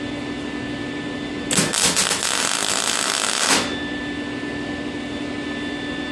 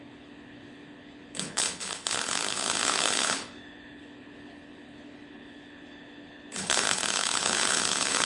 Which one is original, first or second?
first